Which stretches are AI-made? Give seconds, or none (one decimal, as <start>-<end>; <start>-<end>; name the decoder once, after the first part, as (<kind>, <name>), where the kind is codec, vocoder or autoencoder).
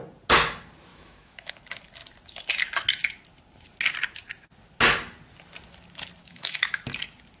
0.9-1.5 (autoencoder, DAC-VAE); 6.2-6.8